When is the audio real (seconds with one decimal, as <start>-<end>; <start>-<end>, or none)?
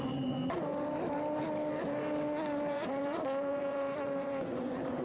0.4-2.7